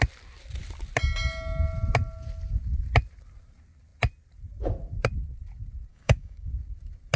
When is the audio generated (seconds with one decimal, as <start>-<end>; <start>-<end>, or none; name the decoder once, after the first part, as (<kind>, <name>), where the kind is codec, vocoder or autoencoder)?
5.9-6.5 (codec, DAC)